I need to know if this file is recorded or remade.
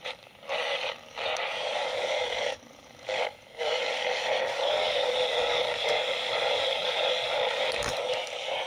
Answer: remade